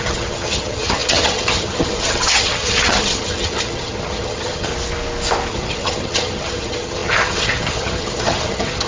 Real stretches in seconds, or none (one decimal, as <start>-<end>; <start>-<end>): 4.7-5.5